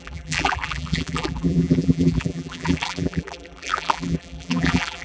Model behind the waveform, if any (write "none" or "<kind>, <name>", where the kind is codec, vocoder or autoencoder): vocoder, BigVGAN v2